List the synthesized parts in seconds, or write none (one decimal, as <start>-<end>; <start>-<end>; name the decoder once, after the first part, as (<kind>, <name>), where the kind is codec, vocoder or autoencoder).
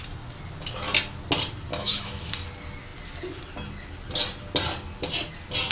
1.7-2.3 (autoencoder, DAC-VAE)